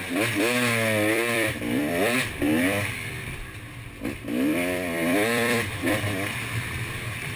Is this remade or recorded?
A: remade